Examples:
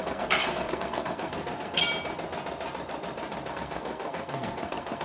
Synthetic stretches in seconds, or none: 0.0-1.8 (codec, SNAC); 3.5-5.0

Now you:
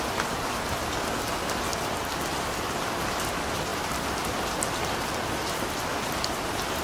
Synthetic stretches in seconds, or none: 1.7-2.3 (vocoder, BigVGAN v2); 3.7-5.7

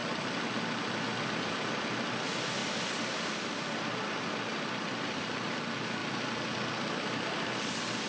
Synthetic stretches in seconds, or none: none

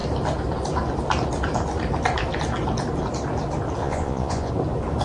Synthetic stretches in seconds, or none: 3.8-4.5 (vocoder, Vocos)

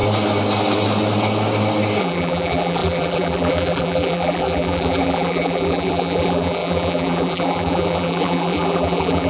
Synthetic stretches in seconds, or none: 2.0-9.3 (vocoder, BigVGAN v2)

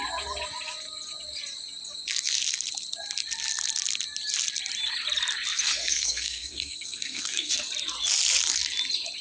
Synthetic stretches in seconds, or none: 5.6-7.6 (codec, SNAC)